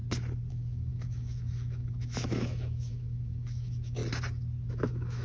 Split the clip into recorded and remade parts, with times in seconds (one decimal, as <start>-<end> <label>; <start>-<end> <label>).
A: 0.0-0.5 recorded; 0.5-4.0 remade; 4.0-4.7 recorded; 4.7-5.2 remade